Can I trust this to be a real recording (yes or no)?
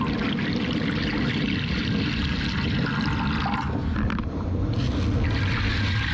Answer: yes